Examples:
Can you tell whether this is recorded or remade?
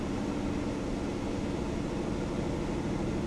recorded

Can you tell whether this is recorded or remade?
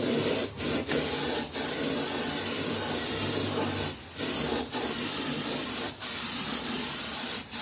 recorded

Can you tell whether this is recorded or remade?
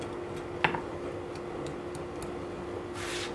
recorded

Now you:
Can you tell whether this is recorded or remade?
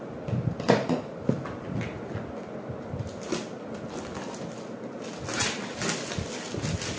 recorded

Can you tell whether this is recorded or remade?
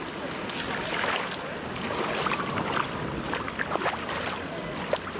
recorded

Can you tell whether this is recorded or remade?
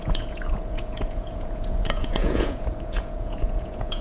remade